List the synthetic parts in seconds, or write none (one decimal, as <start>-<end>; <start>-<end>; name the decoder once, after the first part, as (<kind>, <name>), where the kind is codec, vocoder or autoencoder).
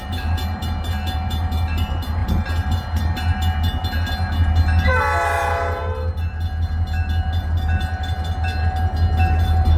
none